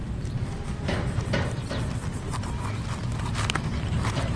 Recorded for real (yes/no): no